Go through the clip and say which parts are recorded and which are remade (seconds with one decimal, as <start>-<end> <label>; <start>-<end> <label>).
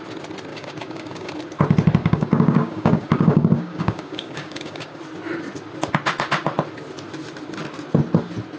0.0-0.5 recorded; 0.5-1.3 remade; 1.3-2.0 recorded; 2.0-5.0 remade; 5.0-8.6 recorded